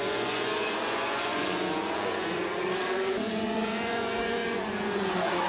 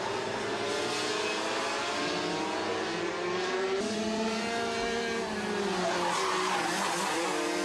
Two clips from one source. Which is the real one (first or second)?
second